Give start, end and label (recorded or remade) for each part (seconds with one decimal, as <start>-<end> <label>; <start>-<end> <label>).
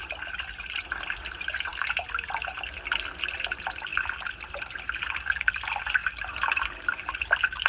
0.0-6.0 recorded; 6.0-6.6 remade; 6.6-7.7 recorded